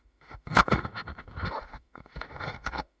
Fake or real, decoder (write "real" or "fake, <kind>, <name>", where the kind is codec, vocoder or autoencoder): fake, autoencoder, DAC-VAE